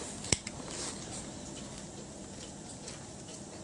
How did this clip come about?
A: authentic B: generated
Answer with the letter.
A